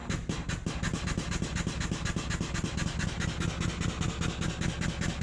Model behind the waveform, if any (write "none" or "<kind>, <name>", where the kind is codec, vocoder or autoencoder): none